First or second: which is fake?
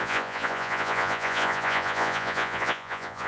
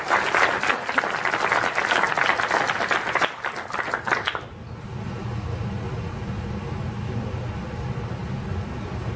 first